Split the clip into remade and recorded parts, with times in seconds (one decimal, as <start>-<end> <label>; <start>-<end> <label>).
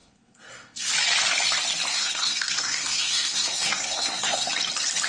0.0-0.9 remade; 0.9-1.9 recorded; 1.9-4.5 remade; 4.5-5.1 recorded